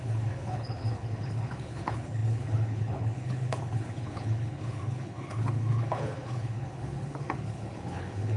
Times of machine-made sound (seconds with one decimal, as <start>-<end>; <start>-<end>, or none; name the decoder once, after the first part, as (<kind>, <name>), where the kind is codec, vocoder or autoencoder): 0.0-8.4 (codec, HILCodec)